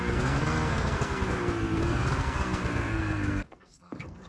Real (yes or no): no